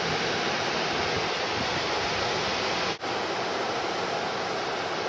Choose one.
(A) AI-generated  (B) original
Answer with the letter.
B